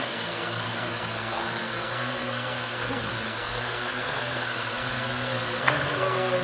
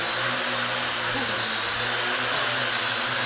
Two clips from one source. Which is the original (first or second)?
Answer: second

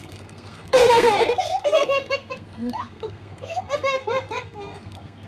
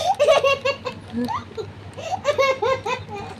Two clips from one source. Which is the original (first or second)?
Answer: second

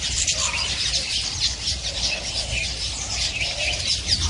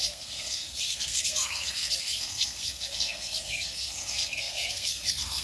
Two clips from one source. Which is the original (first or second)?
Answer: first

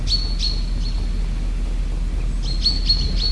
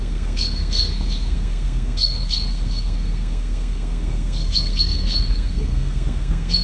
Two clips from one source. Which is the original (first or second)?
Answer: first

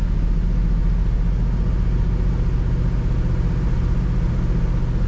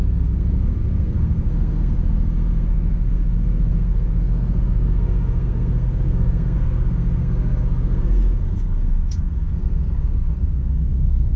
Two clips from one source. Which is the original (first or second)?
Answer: first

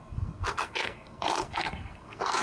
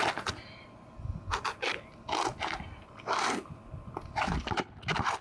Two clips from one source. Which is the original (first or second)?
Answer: second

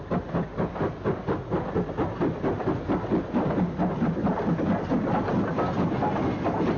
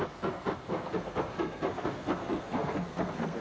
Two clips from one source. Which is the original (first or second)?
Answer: first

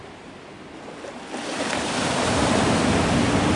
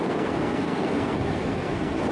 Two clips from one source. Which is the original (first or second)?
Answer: first